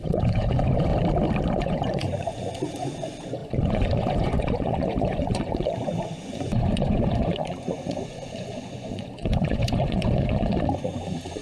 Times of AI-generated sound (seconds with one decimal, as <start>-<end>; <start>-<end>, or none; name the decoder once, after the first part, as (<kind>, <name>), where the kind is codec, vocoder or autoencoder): 0.0-0.9 (vocoder, Vocos); 1.6-11.4